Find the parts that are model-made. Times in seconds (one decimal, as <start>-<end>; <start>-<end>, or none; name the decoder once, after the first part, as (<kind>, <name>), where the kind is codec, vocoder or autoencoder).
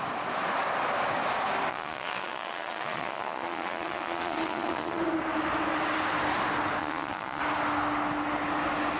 1.7-5.0 (vocoder, Vocos); 6.8-7.4